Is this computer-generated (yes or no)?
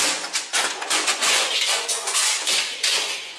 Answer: yes